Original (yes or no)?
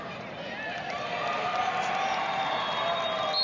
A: yes